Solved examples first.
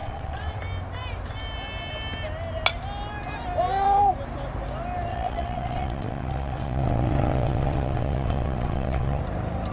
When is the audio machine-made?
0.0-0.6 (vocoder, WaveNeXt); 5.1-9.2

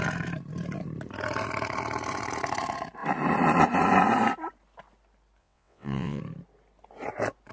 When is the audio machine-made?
5.4-6.2 (vocoder, WaveNeXt)

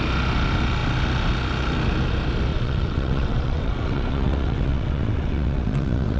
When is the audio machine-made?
2.5-6.2 (vocoder, WaveNeXt)

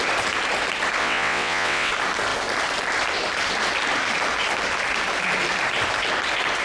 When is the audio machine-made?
1.0-1.9 (vocoder, WaveNeXt)